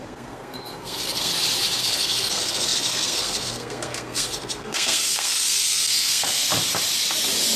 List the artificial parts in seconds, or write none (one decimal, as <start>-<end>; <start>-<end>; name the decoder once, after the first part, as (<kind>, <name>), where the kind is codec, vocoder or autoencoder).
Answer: 0.0-1.3 (codec, SNAC); 1.8-6.5